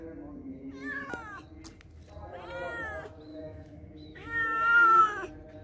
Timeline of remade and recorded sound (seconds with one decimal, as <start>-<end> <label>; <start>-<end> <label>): 0.0-3.3 recorded; 3.3-5.0 remade; 5.0-5.6 recorded